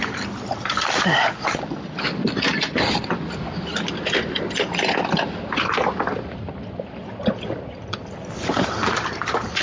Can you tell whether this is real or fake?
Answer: real